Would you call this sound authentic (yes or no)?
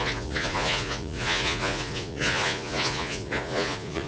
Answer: no